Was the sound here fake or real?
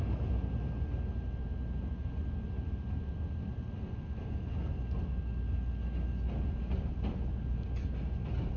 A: real